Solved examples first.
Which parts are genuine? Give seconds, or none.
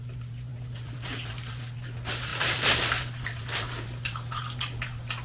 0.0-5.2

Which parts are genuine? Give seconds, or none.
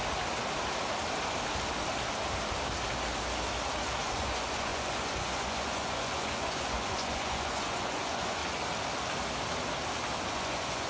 0.0-4.0; 8.4-10.3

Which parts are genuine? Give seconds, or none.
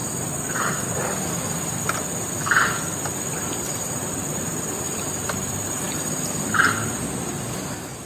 none